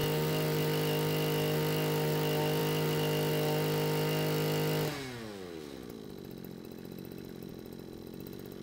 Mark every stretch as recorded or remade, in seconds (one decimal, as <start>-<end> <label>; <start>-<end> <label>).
0.0-8.6 recorded